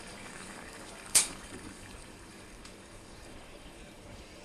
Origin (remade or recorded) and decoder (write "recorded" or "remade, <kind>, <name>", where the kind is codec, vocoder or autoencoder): remade, codec, DAC